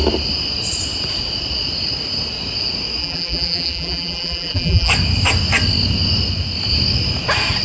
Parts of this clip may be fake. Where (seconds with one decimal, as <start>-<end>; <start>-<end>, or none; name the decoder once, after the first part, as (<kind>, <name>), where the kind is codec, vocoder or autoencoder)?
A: 3.0-4.9 (vocoder, BigVGAN v2)